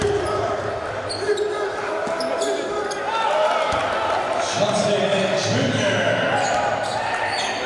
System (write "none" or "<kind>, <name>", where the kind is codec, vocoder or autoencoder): none